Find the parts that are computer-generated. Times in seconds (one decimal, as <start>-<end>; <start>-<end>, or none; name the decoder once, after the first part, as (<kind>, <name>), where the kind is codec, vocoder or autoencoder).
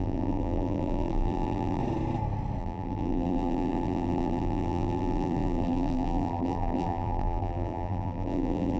0.0-1.8 (vocoder, BigVGAN v2); 2.6-8.8